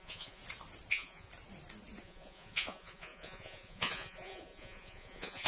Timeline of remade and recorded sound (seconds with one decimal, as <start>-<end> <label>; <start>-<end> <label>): 0.0-0.4 remade; 0.4-0.9 recorded; 0.9-1.3 remade; 1.3-2.0 recorded; 2.0-5.5 remade